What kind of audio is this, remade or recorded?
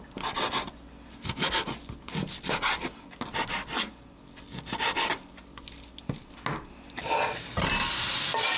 recorded